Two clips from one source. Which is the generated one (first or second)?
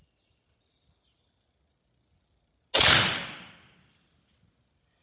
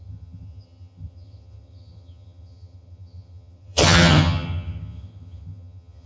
second